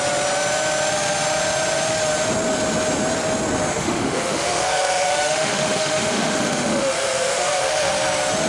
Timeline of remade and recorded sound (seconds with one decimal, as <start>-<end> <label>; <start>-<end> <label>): 0.0-3.7 recorded; 3.7-7.9 remade; 7.9-8.5 recorded